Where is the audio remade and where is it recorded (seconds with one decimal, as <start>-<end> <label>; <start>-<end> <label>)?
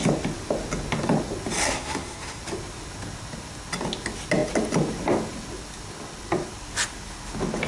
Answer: 0.0-1.6 recorded; 1.6-2.4 remade; 2.4-7.7 recorded